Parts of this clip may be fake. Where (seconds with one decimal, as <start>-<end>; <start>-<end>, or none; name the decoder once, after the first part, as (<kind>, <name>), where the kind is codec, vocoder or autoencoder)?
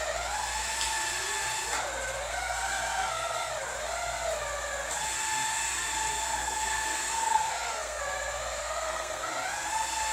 2.3-3.5 (codec, SNAC); 6.4-8.0; 8.6-9.3